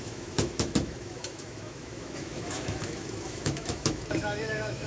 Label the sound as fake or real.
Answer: fake